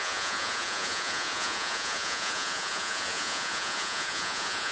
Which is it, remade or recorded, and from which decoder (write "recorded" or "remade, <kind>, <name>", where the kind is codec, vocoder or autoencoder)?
remade, vocoder, Vocos